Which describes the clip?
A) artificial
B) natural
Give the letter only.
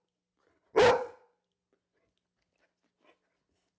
B